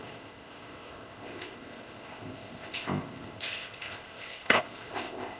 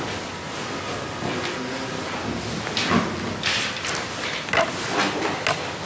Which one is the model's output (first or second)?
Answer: first